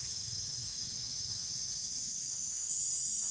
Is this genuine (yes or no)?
no